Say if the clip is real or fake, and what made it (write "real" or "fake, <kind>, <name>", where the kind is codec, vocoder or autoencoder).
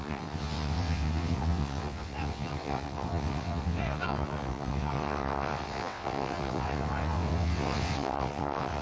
fake, vocoder, WaveNeXt